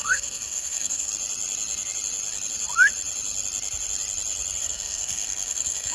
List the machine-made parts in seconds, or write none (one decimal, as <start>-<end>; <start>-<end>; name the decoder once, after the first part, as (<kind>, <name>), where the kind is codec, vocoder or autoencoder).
0.0-1.1 (codec, SNAC); 4.6-5.9